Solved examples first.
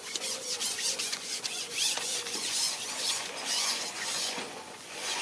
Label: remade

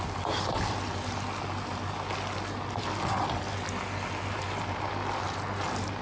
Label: recorded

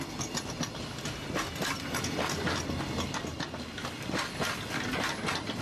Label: recorded